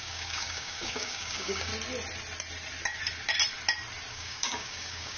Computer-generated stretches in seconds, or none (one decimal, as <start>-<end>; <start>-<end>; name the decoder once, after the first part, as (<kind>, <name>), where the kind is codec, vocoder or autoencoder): 0.0-1.7 (codec, DAC); 4.1-5.2

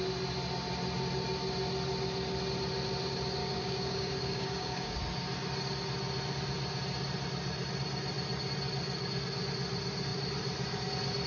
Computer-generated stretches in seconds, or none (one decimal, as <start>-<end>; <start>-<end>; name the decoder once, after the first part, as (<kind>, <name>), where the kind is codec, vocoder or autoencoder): 3.4-5.0 (codec, DAC)

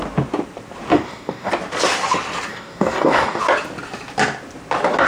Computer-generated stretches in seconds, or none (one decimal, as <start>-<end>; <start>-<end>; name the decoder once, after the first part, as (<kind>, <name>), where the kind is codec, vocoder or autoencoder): 0.9-1.5 (codec, DAC); 2.5-3.4

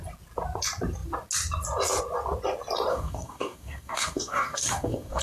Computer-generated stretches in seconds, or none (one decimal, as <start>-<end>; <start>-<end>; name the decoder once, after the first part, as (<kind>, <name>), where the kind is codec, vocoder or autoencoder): 2.9-5.2 (codec, DAC)